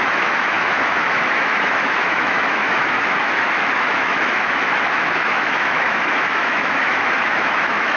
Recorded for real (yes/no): no